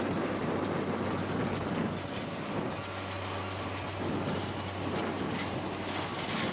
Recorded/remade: recorded